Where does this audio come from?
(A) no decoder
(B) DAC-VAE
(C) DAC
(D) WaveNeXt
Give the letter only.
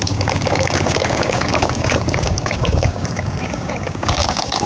C